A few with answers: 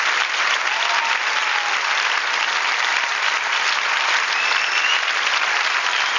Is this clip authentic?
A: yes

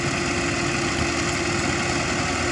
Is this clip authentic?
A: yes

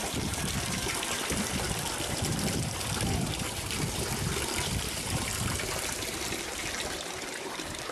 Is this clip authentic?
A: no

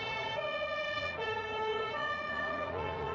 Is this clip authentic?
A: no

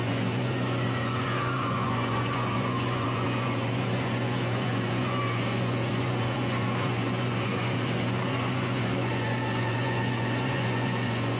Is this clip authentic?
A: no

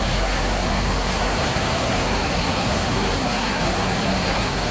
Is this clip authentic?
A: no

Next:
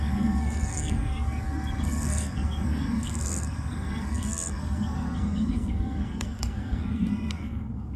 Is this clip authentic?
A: no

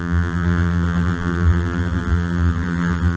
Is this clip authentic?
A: no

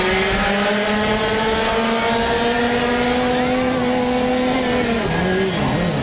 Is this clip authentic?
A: yes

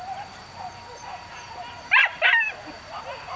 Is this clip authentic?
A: yes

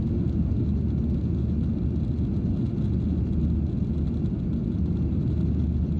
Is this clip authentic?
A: yes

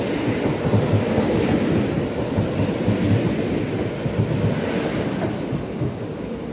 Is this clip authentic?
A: yes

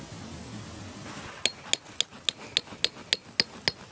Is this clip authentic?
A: yes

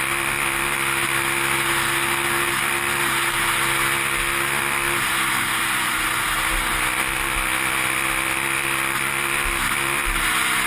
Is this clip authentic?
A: yes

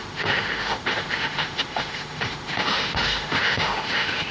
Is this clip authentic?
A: no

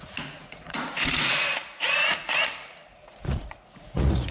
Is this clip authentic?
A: no